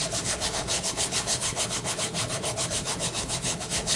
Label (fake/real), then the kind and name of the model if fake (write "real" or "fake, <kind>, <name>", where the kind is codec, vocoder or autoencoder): fake, codec, HILCodec